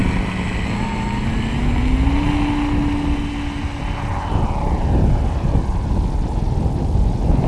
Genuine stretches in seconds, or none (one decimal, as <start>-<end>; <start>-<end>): 0.0-7.5